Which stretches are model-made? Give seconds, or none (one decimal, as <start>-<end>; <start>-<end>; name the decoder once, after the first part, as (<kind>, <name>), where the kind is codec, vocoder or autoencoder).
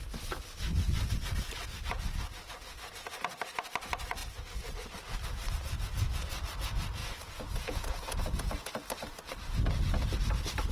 7.0-8.7 (vocoder, Vocos)